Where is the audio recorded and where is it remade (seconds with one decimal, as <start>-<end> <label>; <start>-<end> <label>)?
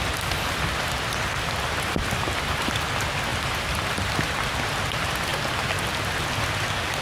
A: 0.0-7.0 recorded